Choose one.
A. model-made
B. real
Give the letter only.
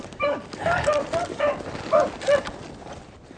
B